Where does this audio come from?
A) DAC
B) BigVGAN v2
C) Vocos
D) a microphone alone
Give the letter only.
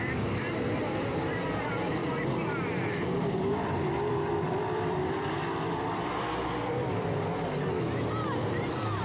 B